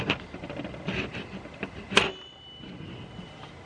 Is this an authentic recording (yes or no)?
yes